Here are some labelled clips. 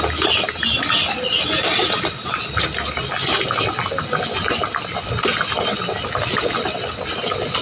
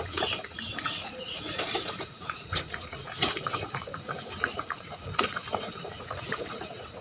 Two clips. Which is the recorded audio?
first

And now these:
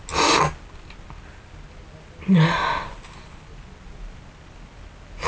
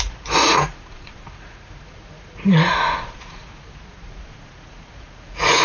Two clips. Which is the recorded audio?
first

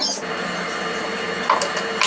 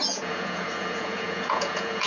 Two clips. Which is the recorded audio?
first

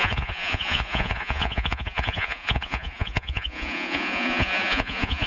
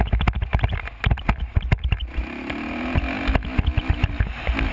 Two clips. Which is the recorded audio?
second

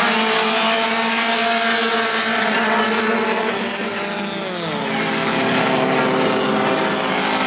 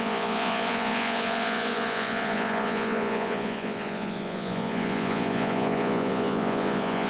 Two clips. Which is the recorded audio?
first